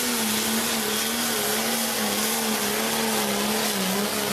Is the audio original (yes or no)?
yes